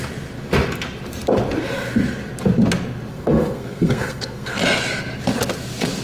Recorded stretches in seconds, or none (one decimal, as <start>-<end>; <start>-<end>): 0.0-3.1; 4.6-6.0